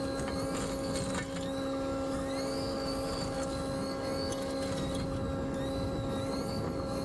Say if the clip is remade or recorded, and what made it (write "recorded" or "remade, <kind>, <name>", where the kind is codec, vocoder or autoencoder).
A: recorded